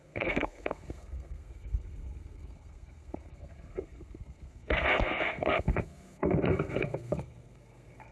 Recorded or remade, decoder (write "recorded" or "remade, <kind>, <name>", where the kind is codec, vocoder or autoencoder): remade, codec, SNAC